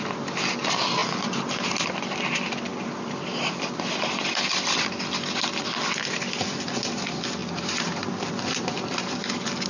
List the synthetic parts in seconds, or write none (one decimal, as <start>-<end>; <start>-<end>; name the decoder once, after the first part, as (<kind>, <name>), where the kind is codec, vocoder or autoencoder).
2.7-4.9 (vocoder, BigVGAN v2); 7.4-8.3